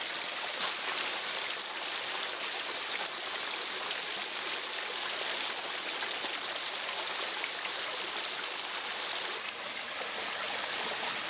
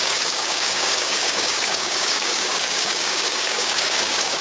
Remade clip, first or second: second